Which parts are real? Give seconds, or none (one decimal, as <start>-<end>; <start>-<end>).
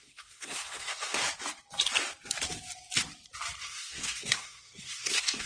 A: 1.2-3.6